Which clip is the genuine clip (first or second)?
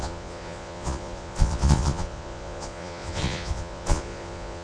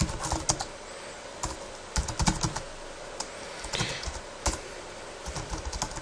second